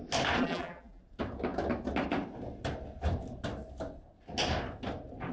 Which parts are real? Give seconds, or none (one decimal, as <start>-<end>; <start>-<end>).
0.0-0.4; 1.0-5.3